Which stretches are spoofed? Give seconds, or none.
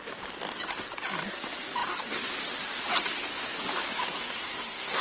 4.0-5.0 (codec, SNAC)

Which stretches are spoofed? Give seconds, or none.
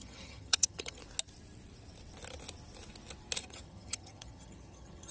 0.0-1.0 (vocoder, HiFi-GAN); 3.4-5.1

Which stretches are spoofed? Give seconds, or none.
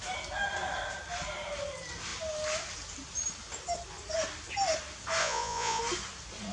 5.2-5.8 (vocoder, Vocos)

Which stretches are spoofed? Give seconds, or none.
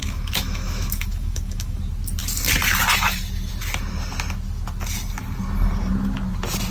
0.0-1.8 (autoencoder, DAC-VAE)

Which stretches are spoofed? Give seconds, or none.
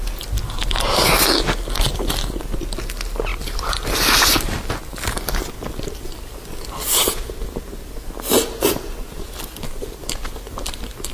3.3-3.9 (vocoder, BigVGAN v2)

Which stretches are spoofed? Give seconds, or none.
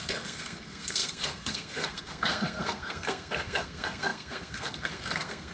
0.0-5.5 (codec, SNAC)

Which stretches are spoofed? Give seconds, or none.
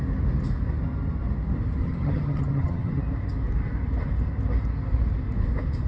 1.8-3.0 (vocoder, HiFi-GAN)